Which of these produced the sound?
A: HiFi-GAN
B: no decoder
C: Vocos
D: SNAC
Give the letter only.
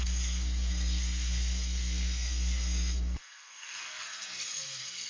D